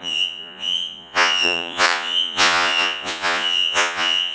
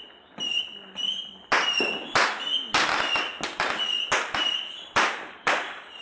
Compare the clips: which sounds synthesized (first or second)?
first